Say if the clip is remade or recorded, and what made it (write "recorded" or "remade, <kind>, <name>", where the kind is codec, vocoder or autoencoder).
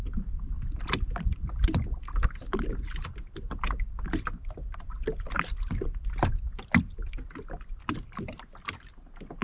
recorded